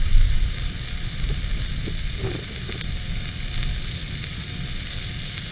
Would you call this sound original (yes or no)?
yes